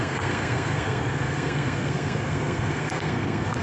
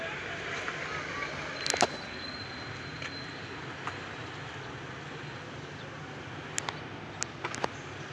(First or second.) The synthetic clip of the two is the first